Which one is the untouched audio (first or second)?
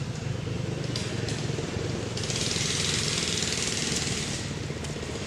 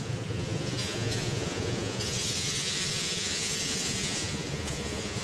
first